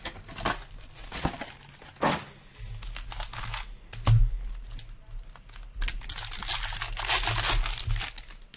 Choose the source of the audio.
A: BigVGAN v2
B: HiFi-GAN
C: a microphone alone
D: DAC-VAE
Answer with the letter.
C